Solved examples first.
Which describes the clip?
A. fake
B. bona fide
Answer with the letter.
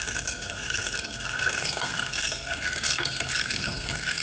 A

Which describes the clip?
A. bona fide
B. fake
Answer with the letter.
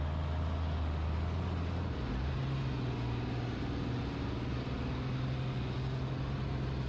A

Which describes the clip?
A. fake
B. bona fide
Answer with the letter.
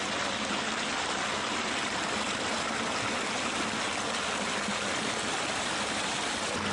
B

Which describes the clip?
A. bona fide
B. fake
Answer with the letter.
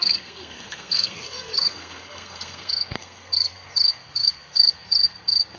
B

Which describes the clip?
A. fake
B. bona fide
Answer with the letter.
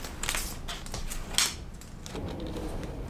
B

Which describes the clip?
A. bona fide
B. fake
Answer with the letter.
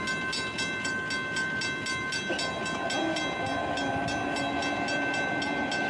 A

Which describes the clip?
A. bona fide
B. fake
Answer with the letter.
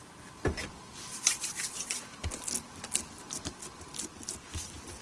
A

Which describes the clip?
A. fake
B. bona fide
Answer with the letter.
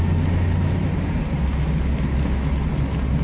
B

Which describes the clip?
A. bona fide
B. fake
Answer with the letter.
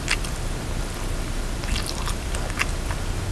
A